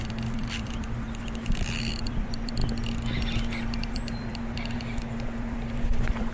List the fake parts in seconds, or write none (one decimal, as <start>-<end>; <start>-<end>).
0.0-2.6; 3.9-6.3